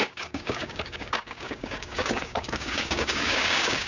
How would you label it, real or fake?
fake